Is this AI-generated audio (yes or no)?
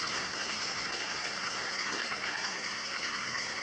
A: yes